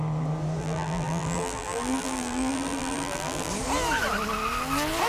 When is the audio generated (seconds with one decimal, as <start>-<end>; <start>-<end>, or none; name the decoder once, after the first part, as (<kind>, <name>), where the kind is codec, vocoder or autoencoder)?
0.6-3.5 (vocoder, BigVGAN v2)